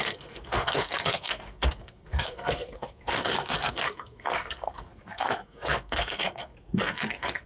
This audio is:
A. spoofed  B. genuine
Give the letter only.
A